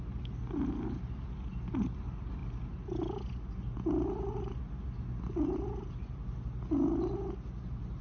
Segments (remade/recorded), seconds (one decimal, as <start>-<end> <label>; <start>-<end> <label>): 0.0-8.0 recorded